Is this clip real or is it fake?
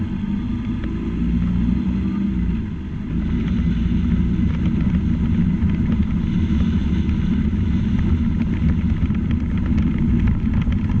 real